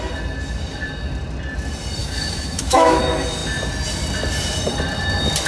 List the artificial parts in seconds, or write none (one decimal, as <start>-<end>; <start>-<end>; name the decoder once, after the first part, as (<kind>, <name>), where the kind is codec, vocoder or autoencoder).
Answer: 2.0-3.0 (autoencoder, DAC-VAE)